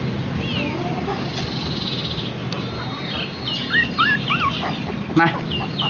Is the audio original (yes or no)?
yes